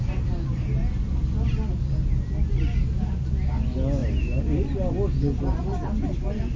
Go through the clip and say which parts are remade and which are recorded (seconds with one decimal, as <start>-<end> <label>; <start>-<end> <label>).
0.0-6.6 recorded